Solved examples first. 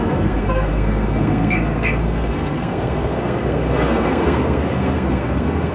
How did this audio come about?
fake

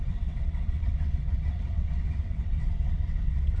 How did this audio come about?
fake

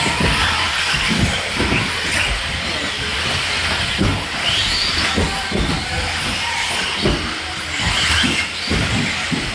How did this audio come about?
real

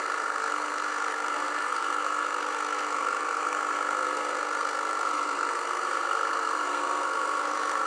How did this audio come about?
fake